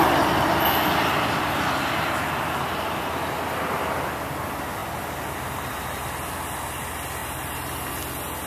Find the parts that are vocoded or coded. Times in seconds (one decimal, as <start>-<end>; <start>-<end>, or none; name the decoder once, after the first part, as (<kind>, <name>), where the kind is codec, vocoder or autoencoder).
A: 7.2-7.9 (vocoder, BigVGAN v2)